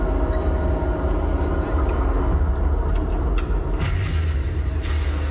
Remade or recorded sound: recorded